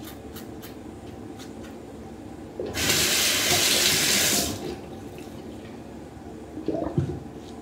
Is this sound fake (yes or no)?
no